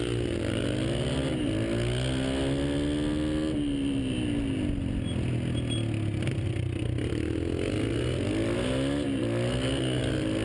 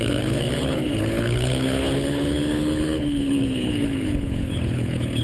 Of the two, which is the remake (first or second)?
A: second